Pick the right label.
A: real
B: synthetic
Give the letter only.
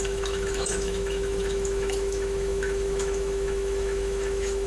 B